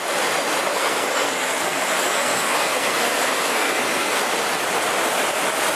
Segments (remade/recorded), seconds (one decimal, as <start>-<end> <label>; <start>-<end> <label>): 0.0-0.7 recorded; 0.7-4.2 remade; 4.2-5.8 recorded